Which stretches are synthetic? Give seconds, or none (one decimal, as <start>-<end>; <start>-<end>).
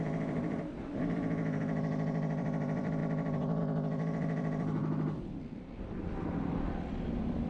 0.0-7.5